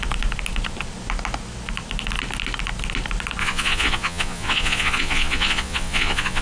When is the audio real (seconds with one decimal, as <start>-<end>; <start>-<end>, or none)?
0.0-3.4